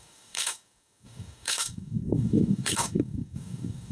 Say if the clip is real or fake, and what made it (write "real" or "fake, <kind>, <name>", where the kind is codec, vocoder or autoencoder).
fake, codec, DAC